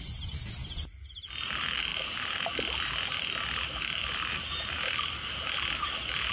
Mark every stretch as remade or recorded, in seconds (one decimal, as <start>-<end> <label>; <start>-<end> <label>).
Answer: 0.0-1.9 recorded; 1.9-2.5 remade; 2.5-4.0 recorded; 4.0-4.7 remade; 4.7-6.3 recorded

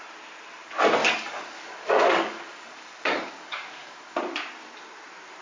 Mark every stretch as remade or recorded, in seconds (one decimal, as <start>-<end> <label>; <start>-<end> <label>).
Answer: 0.0-1.0 recorded; 1.0-4.2 remade; 4.2-5.4 recorded

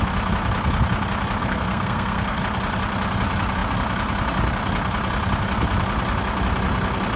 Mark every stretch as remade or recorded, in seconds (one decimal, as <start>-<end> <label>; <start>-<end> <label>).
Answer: 0.0-1.4 recorded; 1.4-2.4 remade; 2.4-7.2 recorded